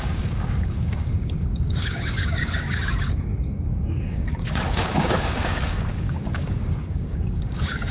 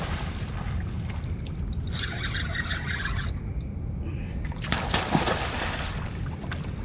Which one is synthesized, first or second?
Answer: first